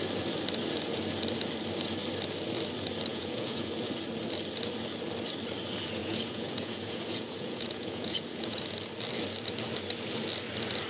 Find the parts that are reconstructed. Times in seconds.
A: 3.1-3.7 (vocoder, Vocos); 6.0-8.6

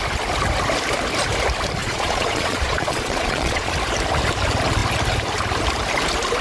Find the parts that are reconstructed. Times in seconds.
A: 1.8-3.7 (vocoder, Vocos)